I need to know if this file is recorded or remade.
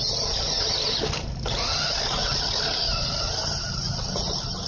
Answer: recorded